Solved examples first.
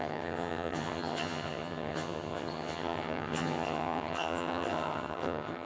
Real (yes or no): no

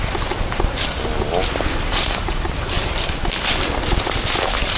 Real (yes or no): yes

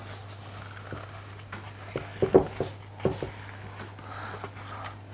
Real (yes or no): yes